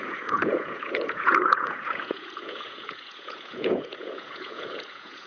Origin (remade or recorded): remade